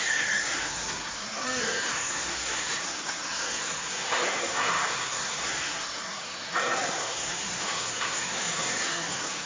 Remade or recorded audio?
remade